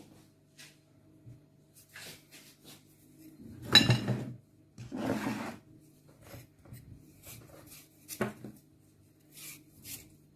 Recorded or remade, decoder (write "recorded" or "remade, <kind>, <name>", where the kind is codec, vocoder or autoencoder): recorded